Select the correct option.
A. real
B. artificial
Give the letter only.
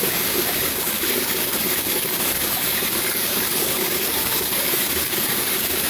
B